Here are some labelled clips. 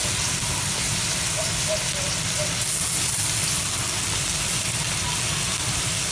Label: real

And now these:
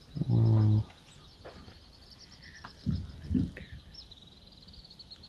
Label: real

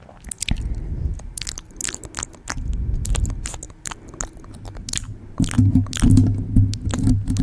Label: real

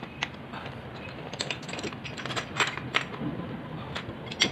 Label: real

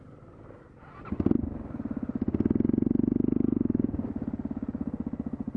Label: real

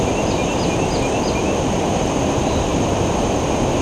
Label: real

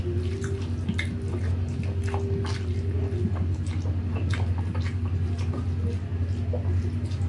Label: real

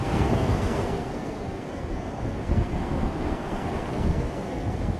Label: fake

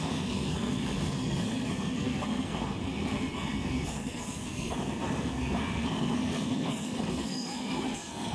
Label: fake